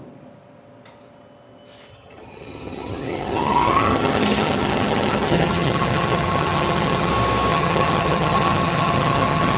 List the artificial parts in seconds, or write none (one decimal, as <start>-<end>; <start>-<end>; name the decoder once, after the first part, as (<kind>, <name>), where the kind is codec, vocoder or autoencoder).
1.9-7.1 (vocoder, HiFi-GAN); 7.5-9.6